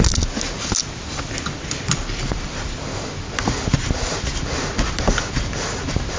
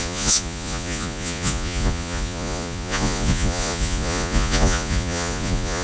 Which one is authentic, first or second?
first